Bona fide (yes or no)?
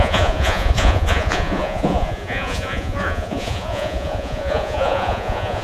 no